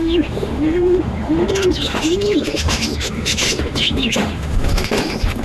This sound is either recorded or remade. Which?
remade